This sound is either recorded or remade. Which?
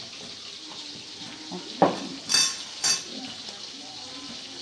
recorded